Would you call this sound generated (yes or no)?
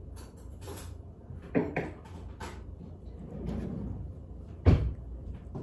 yes